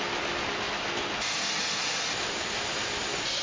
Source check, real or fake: real